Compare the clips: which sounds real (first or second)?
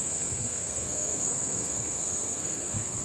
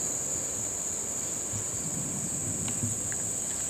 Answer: second